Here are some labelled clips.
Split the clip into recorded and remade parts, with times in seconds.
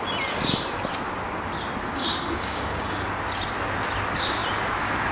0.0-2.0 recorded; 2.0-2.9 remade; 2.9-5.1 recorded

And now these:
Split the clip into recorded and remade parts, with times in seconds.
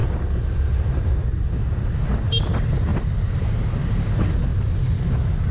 0.0-1.6 remade; 1.6-2.9 recorded; 2.9-3.6 remade; 3.6-5.5 recorded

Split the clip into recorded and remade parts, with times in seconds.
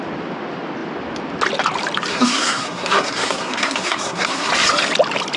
0.0-2.1 recorded; 2.1-4.5 remade; 4.5-5.4 recorded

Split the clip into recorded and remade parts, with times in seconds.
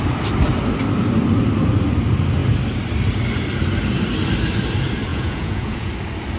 0.0-5.1 recorded; 5.1-5.9 remade; 5.9-6.4 recorded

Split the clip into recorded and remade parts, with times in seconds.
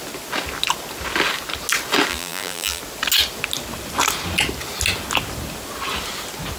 0.0-2.1 recorded; 2.1-2.8 remade; 2.8-6.6 recorded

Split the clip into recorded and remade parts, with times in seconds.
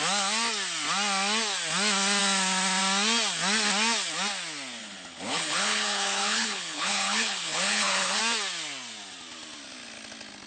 0.0-4.8 recorded; 4.8-8.2 remade; 8.2-10.5 recorded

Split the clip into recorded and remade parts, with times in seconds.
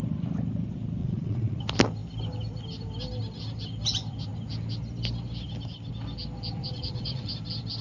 0.0-1.0 recorded; 1.0-1.6 remade; 1.6-6.6 recorded; 6.6-7.3 remade; 7.3-7.8 recorded